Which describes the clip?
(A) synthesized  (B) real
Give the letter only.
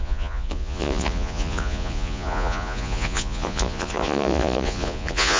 A